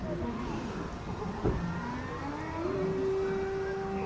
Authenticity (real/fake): real